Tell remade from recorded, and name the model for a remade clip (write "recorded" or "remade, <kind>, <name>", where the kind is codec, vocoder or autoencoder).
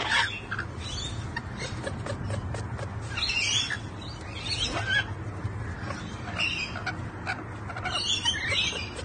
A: recorded